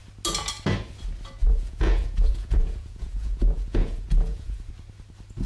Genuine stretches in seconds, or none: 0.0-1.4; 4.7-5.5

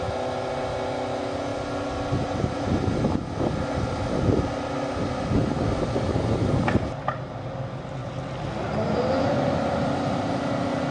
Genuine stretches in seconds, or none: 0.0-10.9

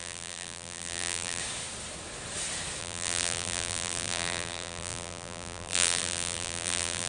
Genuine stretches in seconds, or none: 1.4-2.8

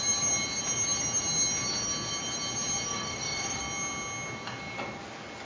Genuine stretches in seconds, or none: 0.0-2.9; 3.6-5.5

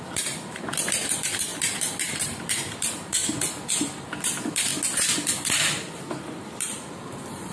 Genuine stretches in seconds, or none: 3.2-3.7; 4.7-5.9

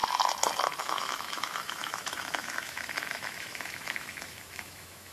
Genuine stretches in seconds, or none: 0.0-0.8

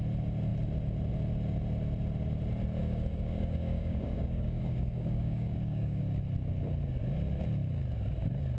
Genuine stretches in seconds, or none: 0.0-2.8; 6.0-8.6

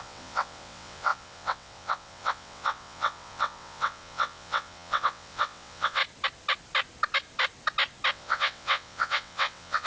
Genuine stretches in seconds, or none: 6.0-8.1